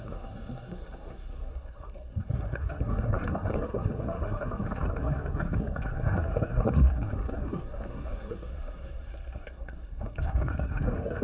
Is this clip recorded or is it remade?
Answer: remade